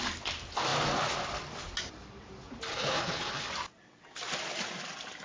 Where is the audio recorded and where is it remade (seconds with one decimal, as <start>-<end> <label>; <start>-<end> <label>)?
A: 0.0-2.7 recorded; 2.7-3.5 remade; 3.5-5.2 recorded